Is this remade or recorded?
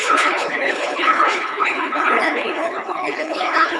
remade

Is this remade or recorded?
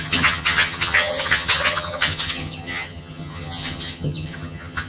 remade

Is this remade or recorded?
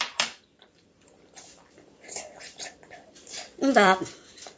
remade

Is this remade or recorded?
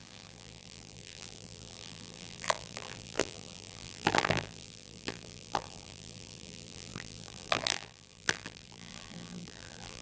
remade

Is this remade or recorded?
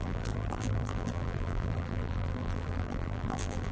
remade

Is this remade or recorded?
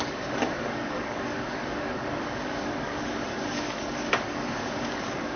remade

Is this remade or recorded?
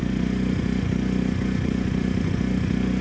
remade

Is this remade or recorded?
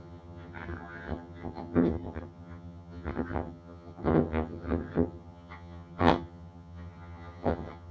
remade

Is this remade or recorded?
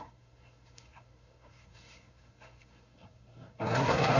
remade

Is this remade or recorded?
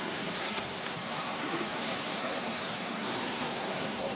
remade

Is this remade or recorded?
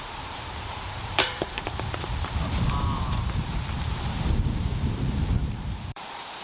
remade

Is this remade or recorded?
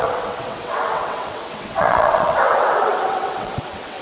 remade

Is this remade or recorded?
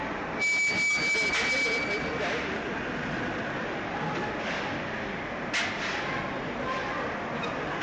recorded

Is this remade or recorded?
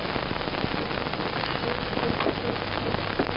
recorded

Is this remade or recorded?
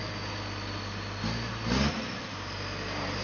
recorded